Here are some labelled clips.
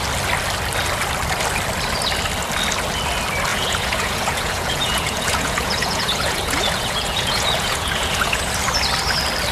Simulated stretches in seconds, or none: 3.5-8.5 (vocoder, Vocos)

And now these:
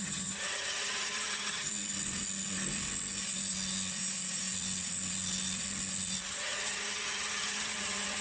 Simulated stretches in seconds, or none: 0.0-1.7 (vocoder, HiFi-GAN); 6.3-8.2

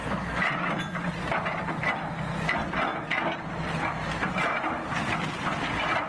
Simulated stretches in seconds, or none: none

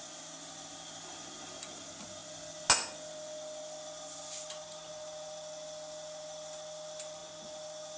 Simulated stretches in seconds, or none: none

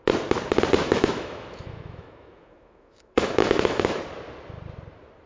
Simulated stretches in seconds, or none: 0.8-4.0 (autoencoder, DAC-VAE)

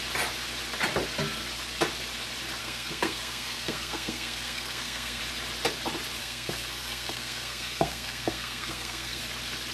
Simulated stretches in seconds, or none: 2.6-5.2 (codec, SNAC); 6.2-9.2

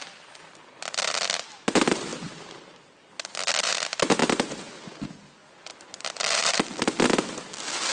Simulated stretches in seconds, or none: none